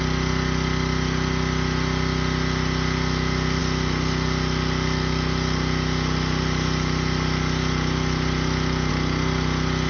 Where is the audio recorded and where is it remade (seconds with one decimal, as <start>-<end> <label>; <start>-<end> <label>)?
0.0-9.9 recorded